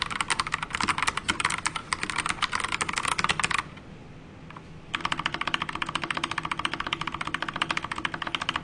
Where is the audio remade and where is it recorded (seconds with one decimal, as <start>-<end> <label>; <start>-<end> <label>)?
0.0-8.6 recorded